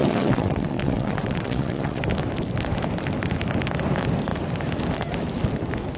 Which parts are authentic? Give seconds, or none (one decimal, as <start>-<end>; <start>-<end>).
2.0-6.0